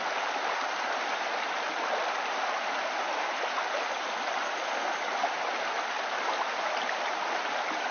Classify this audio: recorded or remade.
recorded